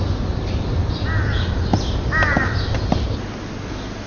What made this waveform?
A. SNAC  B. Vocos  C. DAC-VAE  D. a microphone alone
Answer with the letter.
D